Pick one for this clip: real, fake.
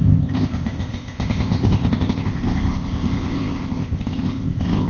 fake